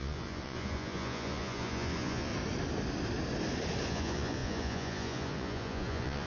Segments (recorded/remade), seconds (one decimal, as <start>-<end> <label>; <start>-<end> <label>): 0.0-2.3 remade; 2.3-3.9 recorded; 3.9-6.3 remade